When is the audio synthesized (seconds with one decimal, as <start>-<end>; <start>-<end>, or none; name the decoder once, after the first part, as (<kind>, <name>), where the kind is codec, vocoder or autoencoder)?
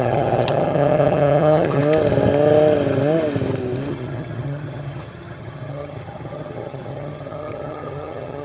0.0-1.8 (vocoder, HiFi-GAN); 3.9-8.4